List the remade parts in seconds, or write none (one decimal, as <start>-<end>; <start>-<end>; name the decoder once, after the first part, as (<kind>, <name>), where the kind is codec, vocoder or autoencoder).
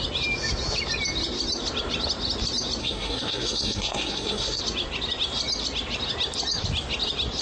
2.8-4.6 (codec, SNAC)